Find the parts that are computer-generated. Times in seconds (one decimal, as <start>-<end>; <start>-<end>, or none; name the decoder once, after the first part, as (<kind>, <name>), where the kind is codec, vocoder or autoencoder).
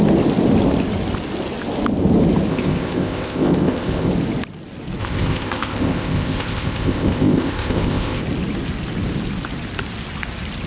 2.5-4.1 (codec, ZipCodec); 5.0-8.2